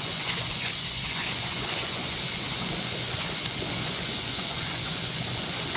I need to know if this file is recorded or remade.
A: remade